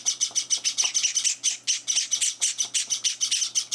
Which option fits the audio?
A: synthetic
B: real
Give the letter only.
B